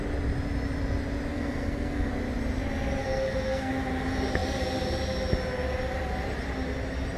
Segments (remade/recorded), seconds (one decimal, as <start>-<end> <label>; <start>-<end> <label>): 0.0-1.3 recorded; 1.3-2.1 remade; 2.1-3.0 recorded; 3.0-3.7 remade; 3.7-7.2 recorded